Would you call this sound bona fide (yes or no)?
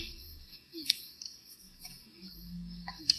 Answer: no